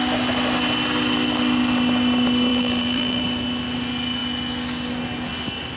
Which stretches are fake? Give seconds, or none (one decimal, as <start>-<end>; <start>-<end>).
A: 2.5-3.2